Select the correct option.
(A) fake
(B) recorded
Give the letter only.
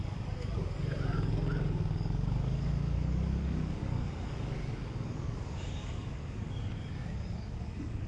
A